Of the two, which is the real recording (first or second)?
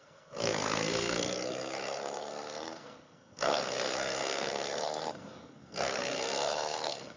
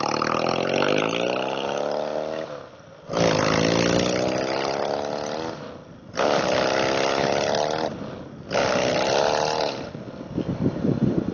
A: second